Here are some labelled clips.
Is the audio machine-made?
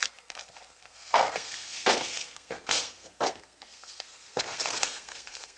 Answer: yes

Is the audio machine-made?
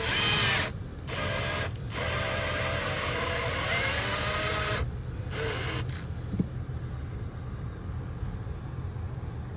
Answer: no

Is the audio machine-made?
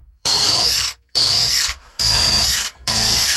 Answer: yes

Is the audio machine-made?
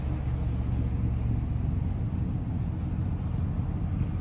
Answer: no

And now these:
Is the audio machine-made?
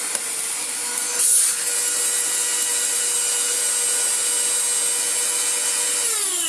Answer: no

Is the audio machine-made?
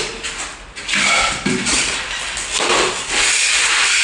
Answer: no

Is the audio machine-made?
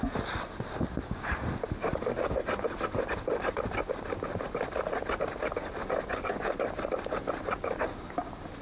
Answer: no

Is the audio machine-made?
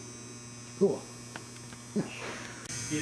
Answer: no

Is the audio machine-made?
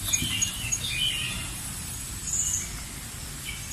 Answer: no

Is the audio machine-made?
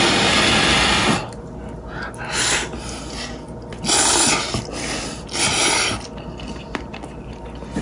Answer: no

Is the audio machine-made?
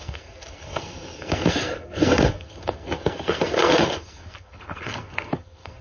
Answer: yes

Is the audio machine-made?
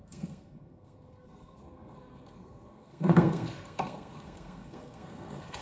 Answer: yes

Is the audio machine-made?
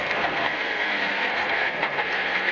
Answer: yes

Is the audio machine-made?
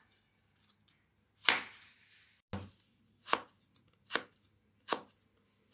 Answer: no